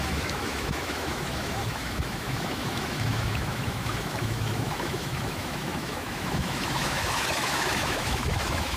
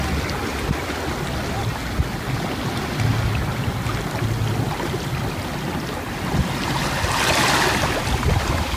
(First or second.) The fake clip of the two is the first